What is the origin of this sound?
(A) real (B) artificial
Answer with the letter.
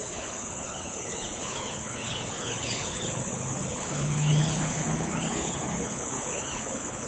B